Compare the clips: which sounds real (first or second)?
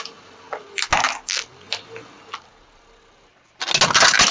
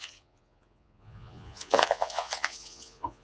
first